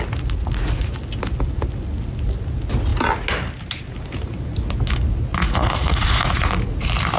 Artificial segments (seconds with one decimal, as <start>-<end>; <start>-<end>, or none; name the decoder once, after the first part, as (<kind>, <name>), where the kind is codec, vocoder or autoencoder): 0.4-1.0 (vocoder, Vocos); 5.3-6.5